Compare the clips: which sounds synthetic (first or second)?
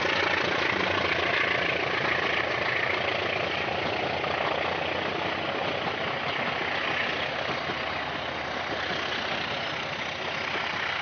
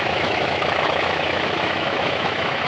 second